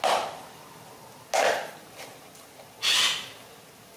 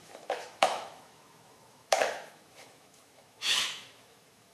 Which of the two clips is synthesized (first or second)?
second